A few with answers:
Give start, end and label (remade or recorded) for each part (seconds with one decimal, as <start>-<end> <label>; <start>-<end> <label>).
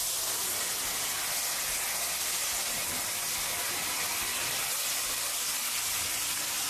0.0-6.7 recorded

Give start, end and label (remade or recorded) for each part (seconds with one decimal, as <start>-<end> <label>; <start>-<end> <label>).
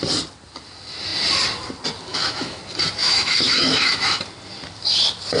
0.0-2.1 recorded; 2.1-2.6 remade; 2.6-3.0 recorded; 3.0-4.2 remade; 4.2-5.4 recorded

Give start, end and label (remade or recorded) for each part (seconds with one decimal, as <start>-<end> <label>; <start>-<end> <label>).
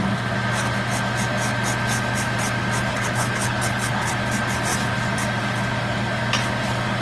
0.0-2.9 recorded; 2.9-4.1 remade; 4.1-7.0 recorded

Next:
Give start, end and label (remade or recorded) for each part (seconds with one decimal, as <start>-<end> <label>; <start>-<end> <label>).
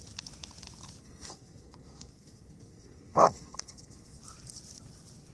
0.0-1.0 recorded; 1.0-4.2 remade; 4.2-5.3 recorded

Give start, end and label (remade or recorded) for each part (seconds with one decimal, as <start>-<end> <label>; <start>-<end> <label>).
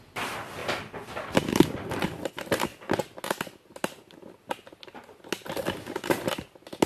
0.0-6.9 recorded